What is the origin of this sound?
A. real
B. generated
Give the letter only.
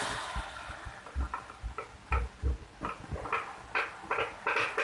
A